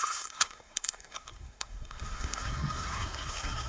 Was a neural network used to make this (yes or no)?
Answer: yes